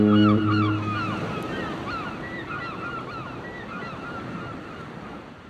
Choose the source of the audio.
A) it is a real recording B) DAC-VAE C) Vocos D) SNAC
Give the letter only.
A